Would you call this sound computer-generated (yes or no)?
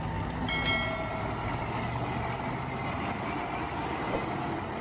no